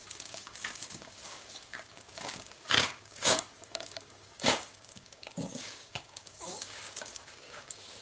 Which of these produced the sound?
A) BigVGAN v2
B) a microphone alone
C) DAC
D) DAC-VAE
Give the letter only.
C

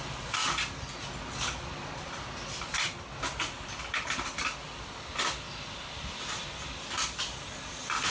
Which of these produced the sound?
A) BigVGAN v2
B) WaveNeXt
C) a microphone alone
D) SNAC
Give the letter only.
C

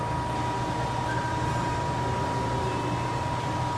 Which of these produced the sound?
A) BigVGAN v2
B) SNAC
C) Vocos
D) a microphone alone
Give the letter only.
D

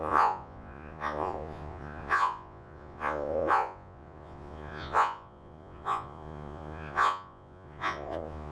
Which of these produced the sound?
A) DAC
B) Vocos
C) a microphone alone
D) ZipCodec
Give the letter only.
B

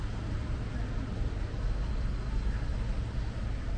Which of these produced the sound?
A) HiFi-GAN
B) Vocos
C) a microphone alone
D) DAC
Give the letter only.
C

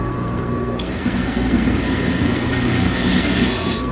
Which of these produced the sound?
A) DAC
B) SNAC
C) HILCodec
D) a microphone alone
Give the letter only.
B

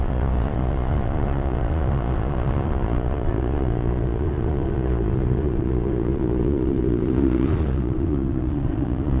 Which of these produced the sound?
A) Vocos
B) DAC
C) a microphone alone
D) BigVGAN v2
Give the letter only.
A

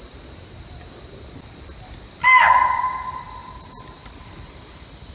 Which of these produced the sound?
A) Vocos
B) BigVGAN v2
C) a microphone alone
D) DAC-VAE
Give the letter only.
C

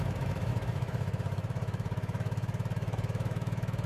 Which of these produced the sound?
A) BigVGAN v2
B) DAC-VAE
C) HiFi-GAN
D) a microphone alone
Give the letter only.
B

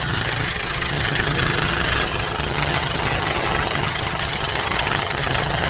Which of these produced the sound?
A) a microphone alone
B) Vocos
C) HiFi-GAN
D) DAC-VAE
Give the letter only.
C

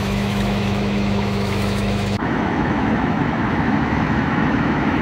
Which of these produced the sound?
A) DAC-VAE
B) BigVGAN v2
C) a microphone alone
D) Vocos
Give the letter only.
A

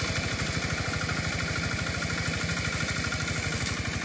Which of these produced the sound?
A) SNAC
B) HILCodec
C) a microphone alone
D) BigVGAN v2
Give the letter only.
C